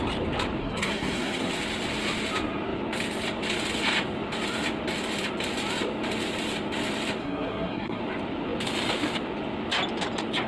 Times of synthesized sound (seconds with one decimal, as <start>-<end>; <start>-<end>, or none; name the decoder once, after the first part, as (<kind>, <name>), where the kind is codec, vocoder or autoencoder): 0.6-1.5 (codec, SNAC); 7.2-8.0